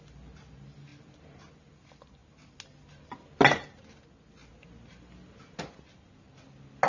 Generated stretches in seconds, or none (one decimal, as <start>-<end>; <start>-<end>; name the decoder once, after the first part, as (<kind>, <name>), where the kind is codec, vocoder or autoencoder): none